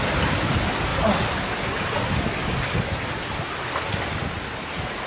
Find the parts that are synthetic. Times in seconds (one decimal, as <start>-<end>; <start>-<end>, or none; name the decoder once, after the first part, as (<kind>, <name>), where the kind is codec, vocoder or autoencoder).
none